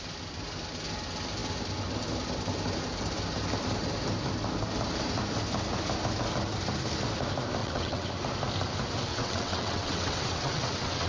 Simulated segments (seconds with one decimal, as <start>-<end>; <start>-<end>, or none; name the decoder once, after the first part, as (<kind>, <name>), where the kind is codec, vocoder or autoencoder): 7.6-8.1 (vocoder, WaveNeXt); 9.1-11.1